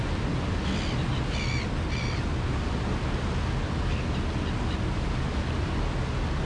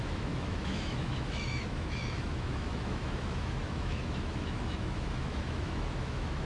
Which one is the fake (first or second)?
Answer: second